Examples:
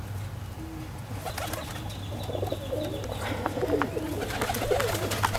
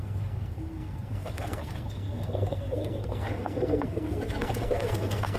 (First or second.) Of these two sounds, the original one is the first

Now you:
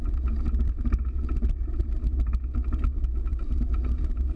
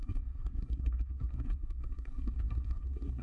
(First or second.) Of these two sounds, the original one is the first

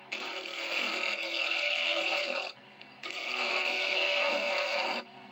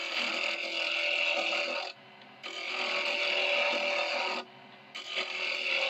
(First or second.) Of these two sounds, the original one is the second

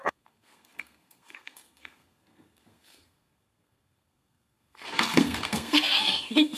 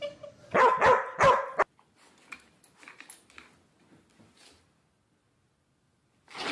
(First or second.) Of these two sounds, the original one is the second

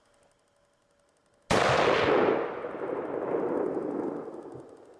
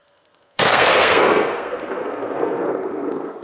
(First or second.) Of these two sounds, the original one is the first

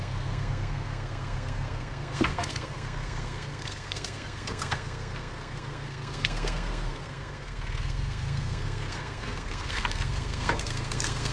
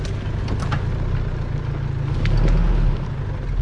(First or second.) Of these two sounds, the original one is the second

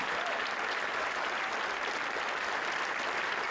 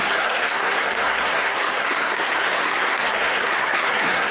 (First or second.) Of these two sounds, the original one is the first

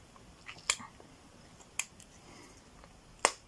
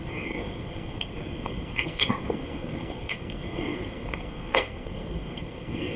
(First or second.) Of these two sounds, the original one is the first